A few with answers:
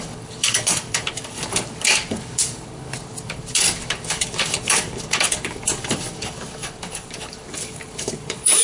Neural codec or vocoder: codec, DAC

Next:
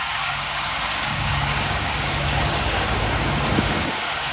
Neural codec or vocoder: codec, DAC